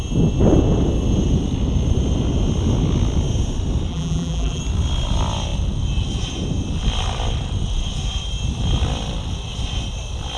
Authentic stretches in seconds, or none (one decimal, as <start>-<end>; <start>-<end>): 0.0-3.9; 4.6-10.4